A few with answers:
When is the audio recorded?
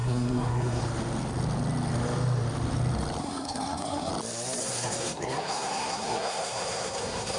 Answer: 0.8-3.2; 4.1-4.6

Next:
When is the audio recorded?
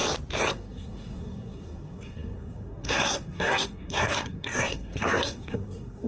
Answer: 0.0-0.5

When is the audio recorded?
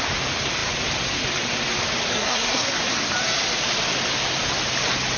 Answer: 0.0-2.1; 2.8-5.2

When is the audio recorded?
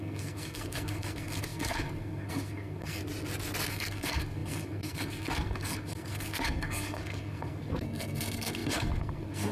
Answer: 3.0-3.7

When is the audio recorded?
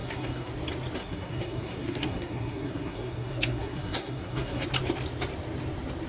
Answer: 0.5-1.0; 4.7-6.1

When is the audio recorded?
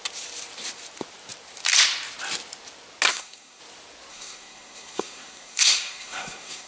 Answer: 0.0-3.1; 3.6-4.1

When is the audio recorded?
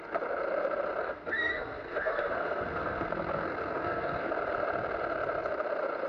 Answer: 0.0-1.0; 4.3-6.1